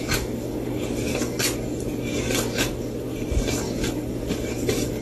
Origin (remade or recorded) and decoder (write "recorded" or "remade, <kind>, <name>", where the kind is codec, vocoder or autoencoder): remade, codec, DAC